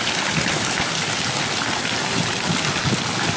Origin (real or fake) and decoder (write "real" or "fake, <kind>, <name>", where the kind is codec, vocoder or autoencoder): real